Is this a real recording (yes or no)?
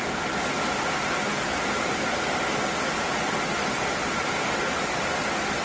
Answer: yes